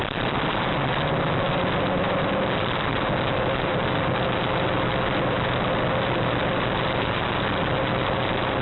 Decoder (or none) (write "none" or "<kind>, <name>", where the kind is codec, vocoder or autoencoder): none